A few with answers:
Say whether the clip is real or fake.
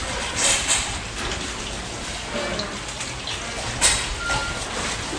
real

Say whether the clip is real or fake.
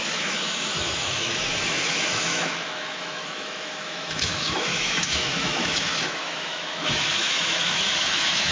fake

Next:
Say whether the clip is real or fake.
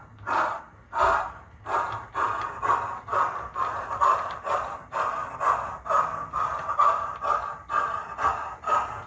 real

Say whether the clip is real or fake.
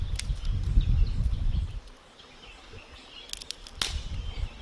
real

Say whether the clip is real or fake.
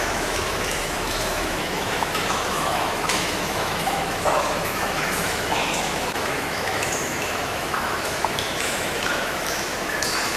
fake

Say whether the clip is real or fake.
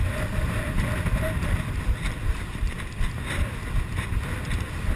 real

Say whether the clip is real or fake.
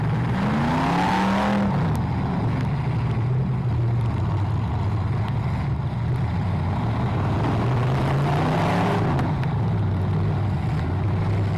real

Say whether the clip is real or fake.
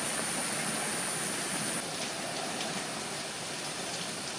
real